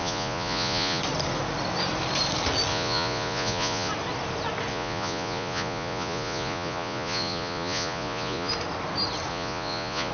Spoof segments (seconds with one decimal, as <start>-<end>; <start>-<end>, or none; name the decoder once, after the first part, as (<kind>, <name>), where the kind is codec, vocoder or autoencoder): 0.0-1.0 (vocoder, Vocos); 2.7-3.9; 4.7-8.5; 9.3-10.1